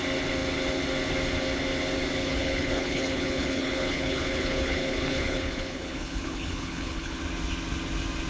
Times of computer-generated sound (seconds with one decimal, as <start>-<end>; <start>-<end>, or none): 2.2-7.2